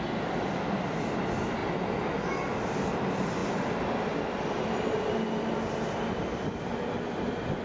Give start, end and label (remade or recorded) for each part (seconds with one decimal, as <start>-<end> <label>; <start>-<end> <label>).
0.0-7.6 recorded